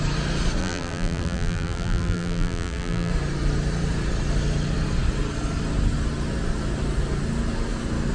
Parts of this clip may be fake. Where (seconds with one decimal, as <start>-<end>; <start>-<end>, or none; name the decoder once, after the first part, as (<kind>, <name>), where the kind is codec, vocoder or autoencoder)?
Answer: 0.6-3.1 (vocoder, BigVGAN v2)